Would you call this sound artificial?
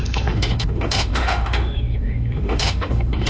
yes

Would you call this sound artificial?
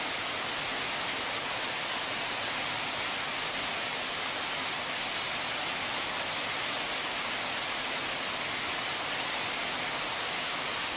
no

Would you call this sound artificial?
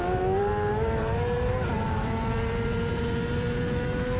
yes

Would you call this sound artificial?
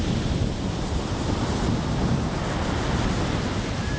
no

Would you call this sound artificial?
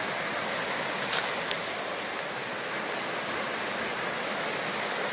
no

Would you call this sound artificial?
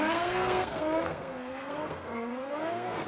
yes